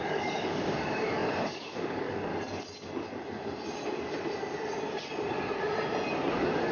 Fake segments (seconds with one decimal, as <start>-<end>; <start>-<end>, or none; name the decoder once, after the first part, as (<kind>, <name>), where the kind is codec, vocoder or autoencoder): 0.0-2.3 (codec, DAC); 6.3-6.7